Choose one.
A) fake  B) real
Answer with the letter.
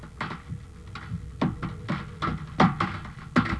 B